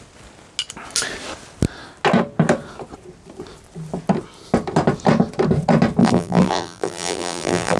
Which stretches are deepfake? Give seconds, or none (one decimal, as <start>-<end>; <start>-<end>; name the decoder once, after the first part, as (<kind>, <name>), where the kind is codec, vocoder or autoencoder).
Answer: 6.0-7.8 (vocoder, BigVGAN v2)